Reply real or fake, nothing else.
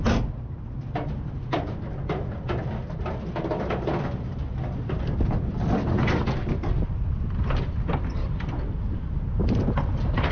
real